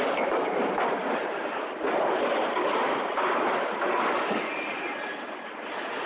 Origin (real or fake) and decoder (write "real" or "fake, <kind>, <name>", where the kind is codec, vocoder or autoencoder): real